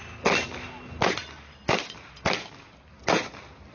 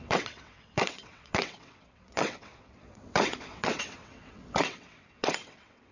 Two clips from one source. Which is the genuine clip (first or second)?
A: first